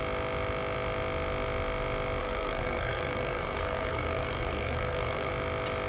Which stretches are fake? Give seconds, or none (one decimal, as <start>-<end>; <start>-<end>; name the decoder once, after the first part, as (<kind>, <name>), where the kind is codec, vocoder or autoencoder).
2.2-5.3 (codec, SNAC)